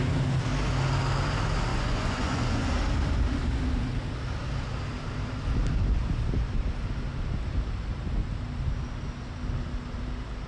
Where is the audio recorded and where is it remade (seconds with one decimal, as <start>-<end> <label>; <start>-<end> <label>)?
0.0-1.7 recorded; 1.7-2.7 remade; 2.7-10.5 recorded